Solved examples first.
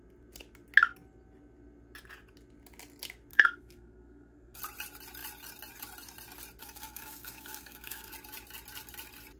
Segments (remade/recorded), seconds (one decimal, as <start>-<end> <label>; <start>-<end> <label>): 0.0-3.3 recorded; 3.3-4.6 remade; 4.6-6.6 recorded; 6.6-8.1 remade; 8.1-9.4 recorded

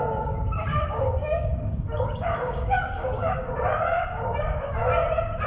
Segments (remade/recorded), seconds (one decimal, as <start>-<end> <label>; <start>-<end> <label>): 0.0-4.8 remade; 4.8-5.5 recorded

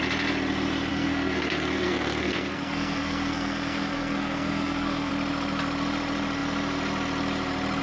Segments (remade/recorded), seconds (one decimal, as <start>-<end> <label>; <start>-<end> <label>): 0.0-0.9 recorded; 0.9-5.1 remade; 5.1-7.8 recorded

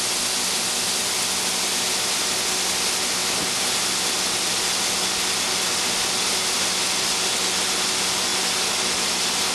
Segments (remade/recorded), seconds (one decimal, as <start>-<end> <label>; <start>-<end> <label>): 0.0-9.5 recorded

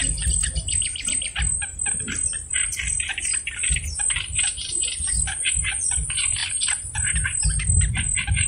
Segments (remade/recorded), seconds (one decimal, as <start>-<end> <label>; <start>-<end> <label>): 0.0-6.4 recorded; 6.4-7.9 remade; 7.9-8.5 recorded